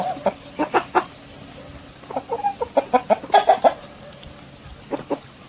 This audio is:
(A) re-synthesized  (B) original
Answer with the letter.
B